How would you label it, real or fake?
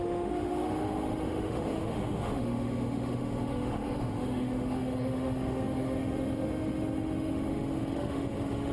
fake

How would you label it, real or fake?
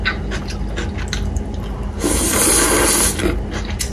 real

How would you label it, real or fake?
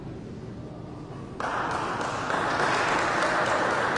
real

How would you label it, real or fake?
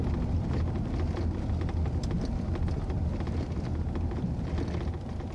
real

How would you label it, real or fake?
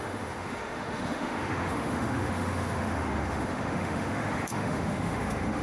fake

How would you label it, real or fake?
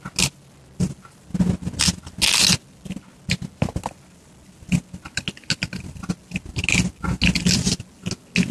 real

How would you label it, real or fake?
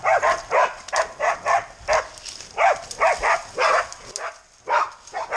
real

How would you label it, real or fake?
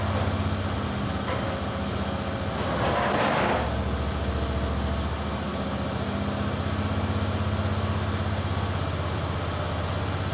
real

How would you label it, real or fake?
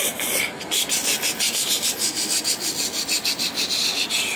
real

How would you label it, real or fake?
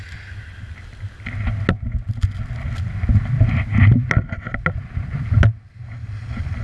real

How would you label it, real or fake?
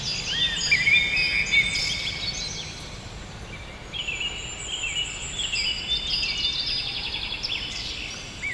real